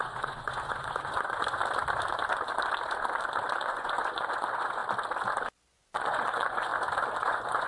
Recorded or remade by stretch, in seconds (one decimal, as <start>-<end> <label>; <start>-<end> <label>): 0.0-1.6 remade; 1.6-3.6 recorded; 3.6-4.8 remade; 4.8-5.7 recorded; 5.7-6.7 remade; 6.7-7.2 recorded; 7.2-7.7 remade